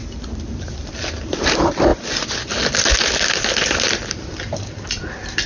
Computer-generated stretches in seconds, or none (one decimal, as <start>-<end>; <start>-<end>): none